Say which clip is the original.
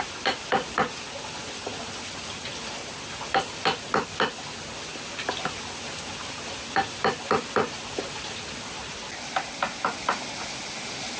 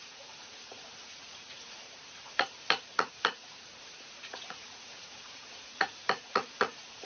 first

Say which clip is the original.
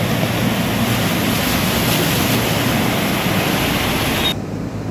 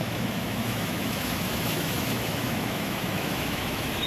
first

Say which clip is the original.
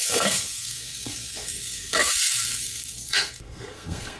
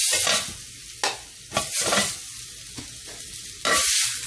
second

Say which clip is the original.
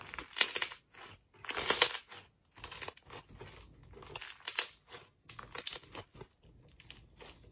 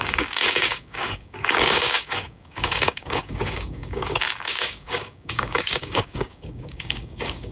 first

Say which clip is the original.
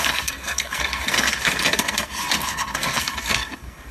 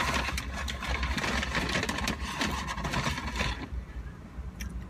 second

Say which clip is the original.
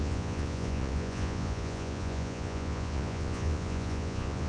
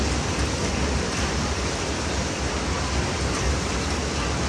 second